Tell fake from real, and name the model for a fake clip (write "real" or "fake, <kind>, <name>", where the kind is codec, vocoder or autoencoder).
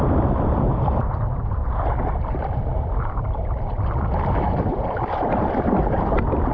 fake, vocoder, BigVGAN v2